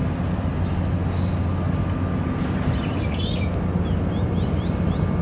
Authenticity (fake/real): real